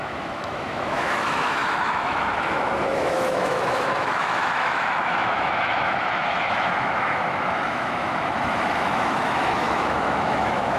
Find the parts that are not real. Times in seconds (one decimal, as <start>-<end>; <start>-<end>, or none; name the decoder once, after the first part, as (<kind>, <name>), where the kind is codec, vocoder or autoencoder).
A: 0.0-10.8 (autoencoder, DAC-VAE)